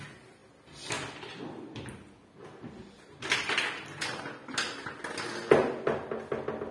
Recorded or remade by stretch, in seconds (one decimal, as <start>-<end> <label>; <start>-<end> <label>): 0.0-6.7 recorded